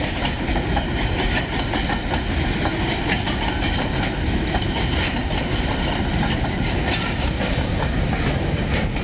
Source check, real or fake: real